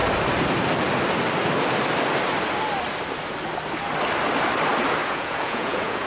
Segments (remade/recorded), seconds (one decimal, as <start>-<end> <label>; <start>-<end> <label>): 0.0-5.0 recorded; 5.0-6.1 remade